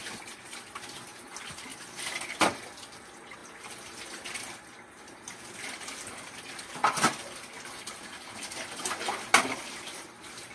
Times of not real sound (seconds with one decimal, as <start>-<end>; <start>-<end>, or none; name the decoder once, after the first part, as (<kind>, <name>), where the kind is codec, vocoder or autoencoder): none